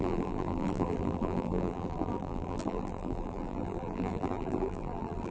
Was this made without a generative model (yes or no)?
no